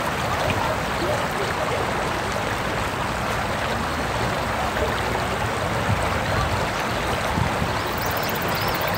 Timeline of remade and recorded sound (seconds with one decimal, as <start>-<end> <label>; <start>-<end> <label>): 0.0-3.9 recorded; 3.9-4.8 remade; 4.8-9.0 recorded